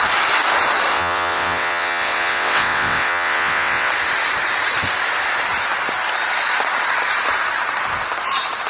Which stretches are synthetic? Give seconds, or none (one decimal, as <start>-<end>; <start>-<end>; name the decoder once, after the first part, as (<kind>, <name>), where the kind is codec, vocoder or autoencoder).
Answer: 0.9-3.9 (vocoder, WaveNeXt)